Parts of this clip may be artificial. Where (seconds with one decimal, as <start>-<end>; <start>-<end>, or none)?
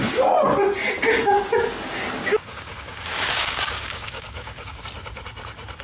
2.2-4.8